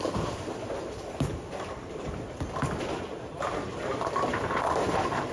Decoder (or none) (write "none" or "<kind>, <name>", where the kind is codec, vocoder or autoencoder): none